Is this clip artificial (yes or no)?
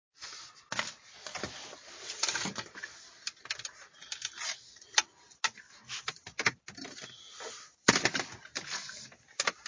no